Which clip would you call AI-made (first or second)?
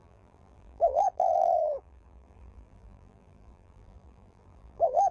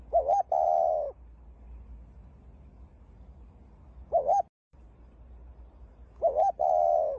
first